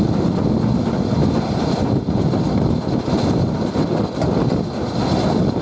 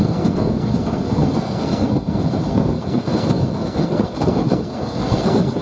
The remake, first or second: second